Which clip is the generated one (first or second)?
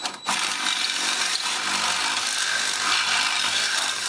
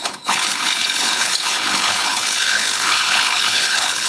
second